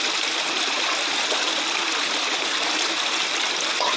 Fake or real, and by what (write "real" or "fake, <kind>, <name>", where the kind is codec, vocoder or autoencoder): real